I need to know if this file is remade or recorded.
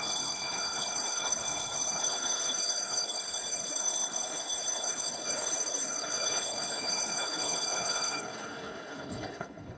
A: remade